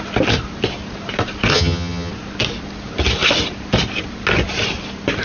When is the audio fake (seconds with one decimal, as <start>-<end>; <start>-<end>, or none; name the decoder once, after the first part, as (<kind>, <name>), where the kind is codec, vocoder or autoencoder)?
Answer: 1.5-2.1 (vocoder, HiFi-GAN)